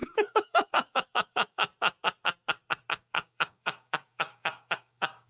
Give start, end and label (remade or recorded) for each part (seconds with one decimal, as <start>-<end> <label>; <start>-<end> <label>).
0.0-1.7 remade; 1.7-2.9 recorded; 2.9-5.3 remade